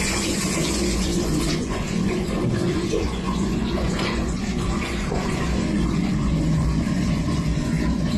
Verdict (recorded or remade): remade